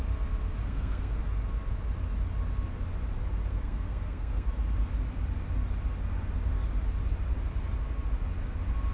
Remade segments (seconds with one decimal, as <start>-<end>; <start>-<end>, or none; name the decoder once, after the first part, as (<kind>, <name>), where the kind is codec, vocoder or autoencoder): 0.6-1.2 (codec, SNAC); 3.5-4.5